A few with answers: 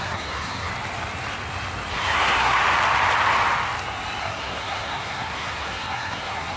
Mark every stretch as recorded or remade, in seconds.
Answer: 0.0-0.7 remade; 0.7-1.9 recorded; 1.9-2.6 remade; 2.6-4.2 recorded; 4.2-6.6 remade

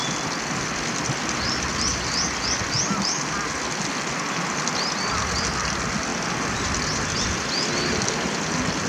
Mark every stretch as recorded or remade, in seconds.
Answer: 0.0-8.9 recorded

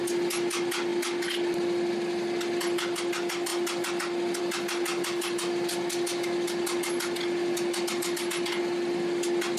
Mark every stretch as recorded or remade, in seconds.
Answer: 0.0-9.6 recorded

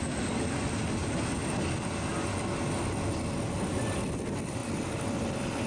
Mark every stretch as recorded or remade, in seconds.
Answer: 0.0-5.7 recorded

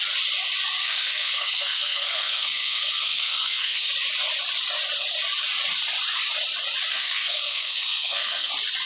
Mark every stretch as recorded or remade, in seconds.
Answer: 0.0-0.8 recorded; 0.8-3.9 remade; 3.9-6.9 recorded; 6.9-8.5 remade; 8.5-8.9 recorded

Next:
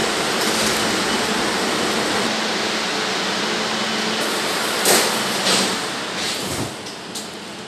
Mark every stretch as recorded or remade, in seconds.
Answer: 0.0-7.7 recorded